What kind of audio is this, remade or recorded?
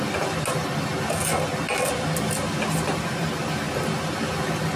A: recorded